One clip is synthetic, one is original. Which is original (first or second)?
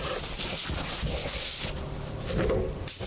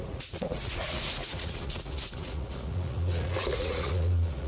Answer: first